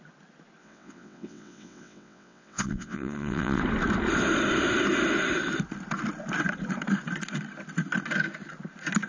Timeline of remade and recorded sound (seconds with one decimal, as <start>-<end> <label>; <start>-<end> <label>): 0.0-0.6 recorded; 0.6-3.6 remade; 3.6-9.1 recorded